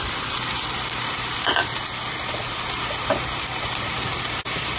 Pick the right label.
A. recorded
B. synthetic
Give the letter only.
B